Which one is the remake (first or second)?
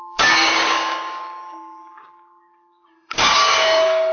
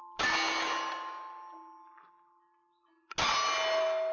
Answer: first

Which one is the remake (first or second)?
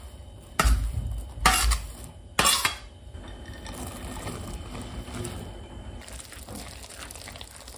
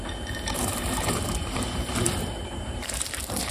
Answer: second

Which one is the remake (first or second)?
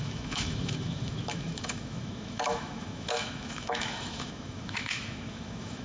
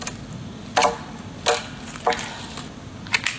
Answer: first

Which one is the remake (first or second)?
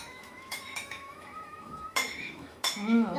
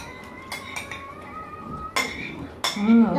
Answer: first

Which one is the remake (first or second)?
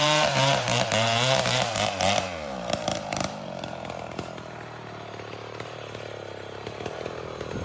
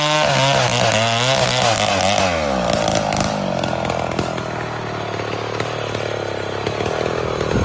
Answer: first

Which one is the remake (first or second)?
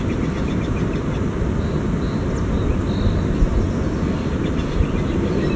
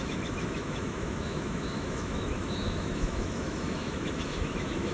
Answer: second